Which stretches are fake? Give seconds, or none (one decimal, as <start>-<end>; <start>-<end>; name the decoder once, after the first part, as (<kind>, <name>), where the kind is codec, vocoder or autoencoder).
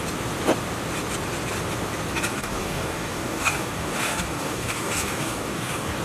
2.3-6.0 (codec, DAC)